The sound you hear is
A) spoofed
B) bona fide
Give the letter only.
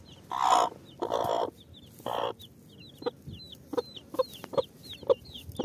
B